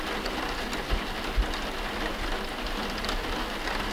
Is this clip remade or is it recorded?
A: recorded